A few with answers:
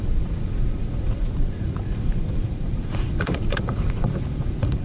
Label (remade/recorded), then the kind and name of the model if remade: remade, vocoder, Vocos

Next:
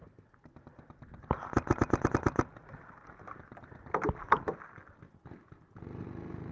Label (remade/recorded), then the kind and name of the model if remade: recorded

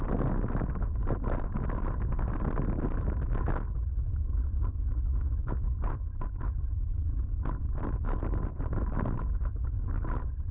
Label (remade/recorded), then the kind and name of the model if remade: recorded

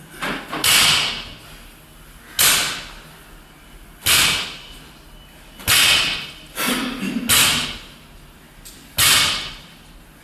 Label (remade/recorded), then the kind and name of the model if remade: recorded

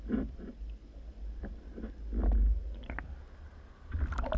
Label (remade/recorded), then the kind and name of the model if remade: recorded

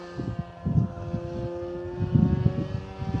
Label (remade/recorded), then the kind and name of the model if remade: recorded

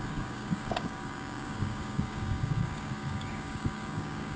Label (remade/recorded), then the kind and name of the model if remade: remade, codec, DAC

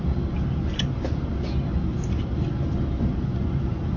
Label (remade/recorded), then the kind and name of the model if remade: recorded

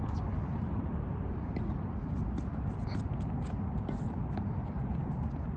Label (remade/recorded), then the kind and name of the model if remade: recorded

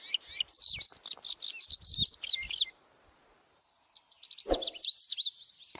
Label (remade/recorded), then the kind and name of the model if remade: recorded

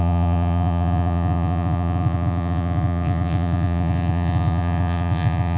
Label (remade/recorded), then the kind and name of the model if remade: remade, vocoder, Vocos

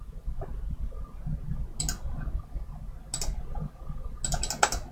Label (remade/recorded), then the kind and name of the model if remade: recorded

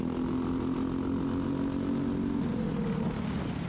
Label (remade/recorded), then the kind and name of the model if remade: recorded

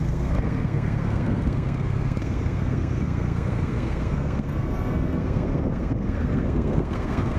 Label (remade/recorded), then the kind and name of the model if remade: remade, codec, SNAC